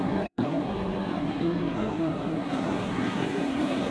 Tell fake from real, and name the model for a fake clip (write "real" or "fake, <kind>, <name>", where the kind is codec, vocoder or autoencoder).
fake, codec, SNAC